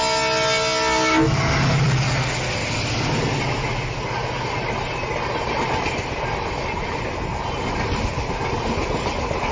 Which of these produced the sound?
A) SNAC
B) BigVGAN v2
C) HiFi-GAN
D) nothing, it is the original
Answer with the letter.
D